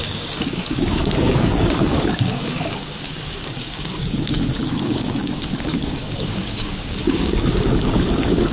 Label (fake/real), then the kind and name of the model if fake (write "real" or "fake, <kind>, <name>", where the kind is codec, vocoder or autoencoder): fake, codec, DAC